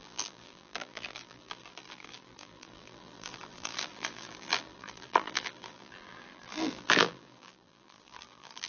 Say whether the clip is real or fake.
fake